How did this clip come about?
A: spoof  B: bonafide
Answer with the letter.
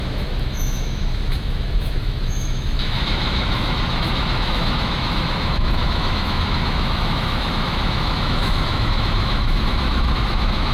A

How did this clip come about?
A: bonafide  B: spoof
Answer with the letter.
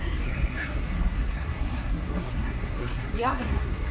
B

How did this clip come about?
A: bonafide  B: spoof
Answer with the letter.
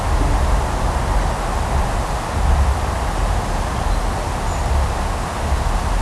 A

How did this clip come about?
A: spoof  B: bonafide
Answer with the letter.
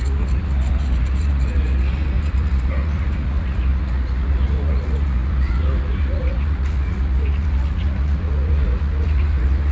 A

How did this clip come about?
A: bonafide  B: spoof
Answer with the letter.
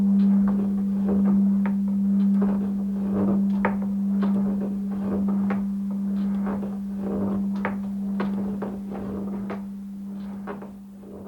A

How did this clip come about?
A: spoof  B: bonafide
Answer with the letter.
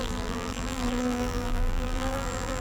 A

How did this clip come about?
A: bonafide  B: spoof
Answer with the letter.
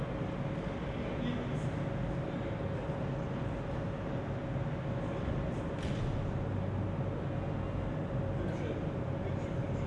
A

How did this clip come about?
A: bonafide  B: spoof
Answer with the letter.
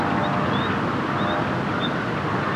A